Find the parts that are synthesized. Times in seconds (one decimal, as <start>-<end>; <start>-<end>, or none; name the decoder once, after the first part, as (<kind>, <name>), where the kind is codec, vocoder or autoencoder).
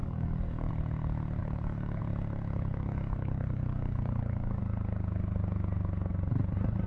0.0-0.7 (codec, DAC); 1.4-2.0; 2.7-4.6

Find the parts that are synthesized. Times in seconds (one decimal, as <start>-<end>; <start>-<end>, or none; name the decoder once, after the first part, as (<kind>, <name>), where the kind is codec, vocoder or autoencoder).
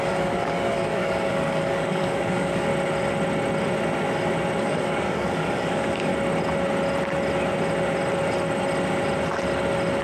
0.0-2.7 (codec, DAC); 4.6-6.1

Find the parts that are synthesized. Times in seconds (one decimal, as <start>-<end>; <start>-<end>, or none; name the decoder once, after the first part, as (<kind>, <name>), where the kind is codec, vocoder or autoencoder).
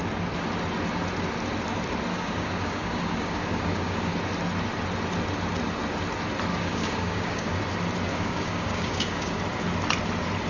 2.1-4.1 (codec, DAC); 6.5-7.5; 8.1-9.4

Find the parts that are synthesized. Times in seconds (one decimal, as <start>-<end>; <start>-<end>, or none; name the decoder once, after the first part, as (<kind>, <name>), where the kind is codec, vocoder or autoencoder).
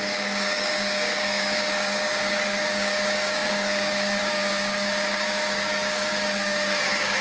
0.0-7.2 (codec, DAC)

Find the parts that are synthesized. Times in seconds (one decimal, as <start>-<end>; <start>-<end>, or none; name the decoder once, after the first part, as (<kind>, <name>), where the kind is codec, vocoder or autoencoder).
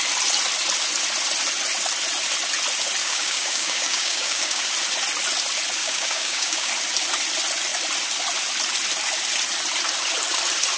3.0-4.6 (codec, DAC); 5.8-6.7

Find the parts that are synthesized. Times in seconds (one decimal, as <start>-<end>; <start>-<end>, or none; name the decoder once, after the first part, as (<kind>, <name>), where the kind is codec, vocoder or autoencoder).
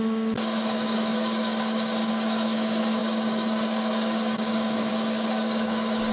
0.0-6.1 (codec, DAC)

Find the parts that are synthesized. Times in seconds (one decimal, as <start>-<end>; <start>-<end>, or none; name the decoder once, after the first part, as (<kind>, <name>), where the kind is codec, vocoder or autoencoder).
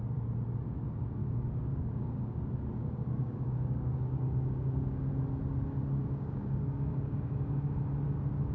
1.2-2.4 (codec, DAC); 2.8-5.1; 6.0-7.7